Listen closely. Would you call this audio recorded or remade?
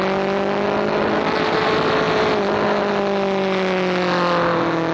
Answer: recorded